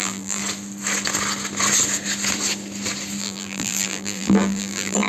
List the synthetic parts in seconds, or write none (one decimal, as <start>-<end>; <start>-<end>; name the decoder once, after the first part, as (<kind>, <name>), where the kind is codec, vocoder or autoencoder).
0.0-0.4 (vocoder, BigVGAN v2); 3.2-5.1